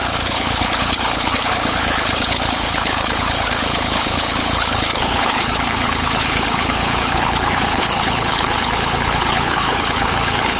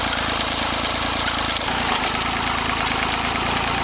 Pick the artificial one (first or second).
first